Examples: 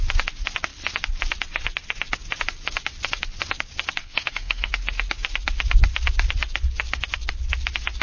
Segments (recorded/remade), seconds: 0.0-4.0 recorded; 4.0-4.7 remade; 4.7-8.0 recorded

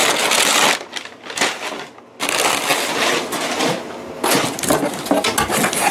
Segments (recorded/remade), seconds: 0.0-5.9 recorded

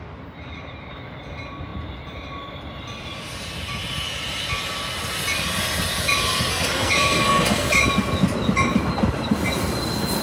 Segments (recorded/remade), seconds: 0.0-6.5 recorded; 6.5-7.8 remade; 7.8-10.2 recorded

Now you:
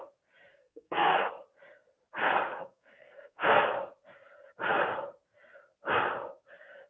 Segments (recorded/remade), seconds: 0.0-0.5 recorded; 0.5-1.3 remade; 1.3-2.5 recorded; 2.5-3.7 remade; 3.7-6.9 recorded